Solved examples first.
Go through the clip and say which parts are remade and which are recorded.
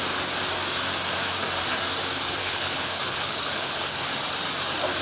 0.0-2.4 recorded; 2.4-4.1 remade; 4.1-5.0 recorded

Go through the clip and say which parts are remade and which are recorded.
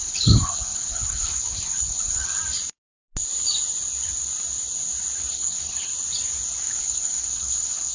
0.0-2.4 remade; 2.4-5.3 recorded; 5.3-5.9 remade; 5.9-6.6 recorded; 6.6-7.9 remade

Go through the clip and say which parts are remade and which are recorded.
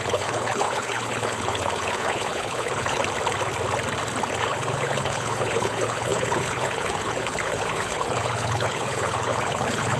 0.0-3.0 remade; 3.0-4.4 recorded; 4.4-10.0 remade